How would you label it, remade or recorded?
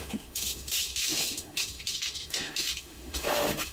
remade